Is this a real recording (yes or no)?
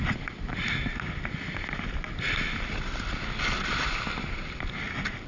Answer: yes